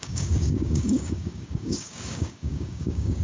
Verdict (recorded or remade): remade